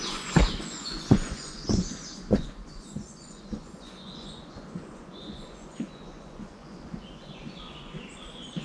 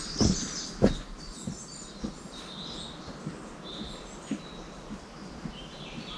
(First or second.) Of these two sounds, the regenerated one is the first